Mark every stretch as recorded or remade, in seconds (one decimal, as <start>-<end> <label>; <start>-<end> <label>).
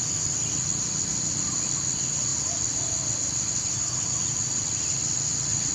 0.0-5.7 recorded